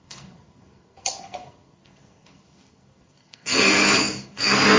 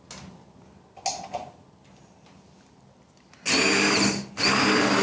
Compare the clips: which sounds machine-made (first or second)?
first